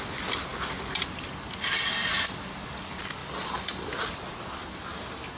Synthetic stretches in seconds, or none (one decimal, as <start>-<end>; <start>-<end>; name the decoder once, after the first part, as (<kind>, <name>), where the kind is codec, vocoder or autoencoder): 2.0-2.5 (vocoder, BigVGAN v2); 3.2-4.2